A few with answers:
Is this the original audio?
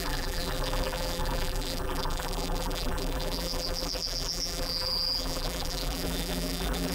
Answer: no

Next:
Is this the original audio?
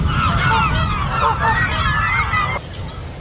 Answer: yes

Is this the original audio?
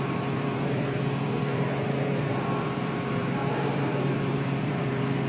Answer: no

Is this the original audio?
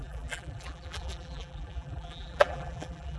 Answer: no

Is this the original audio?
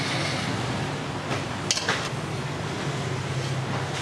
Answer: yes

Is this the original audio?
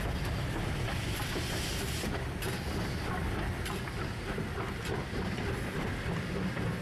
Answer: yes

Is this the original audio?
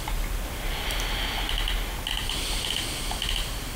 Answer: yes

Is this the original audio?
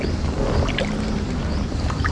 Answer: yes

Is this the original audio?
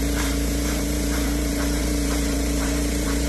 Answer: no